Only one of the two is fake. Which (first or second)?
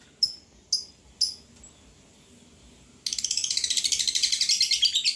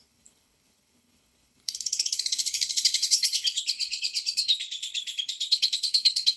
second